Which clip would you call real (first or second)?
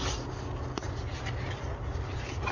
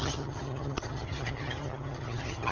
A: first